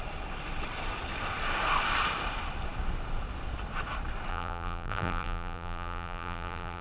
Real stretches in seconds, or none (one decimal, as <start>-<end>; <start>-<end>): 0.0-4.3